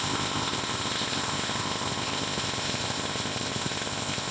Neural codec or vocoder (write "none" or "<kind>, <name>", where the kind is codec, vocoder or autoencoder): codec, ZipCodec